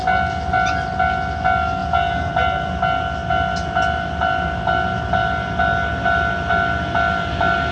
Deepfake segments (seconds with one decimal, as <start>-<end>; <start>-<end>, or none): 1.8-2.3